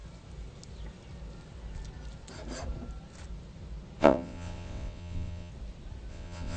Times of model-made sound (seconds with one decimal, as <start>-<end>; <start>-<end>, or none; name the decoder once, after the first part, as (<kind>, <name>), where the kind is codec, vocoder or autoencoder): 4.0-5.5 (vocoder, WaveNeXt); 6.1-6.6